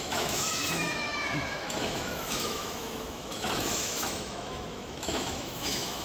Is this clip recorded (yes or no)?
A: no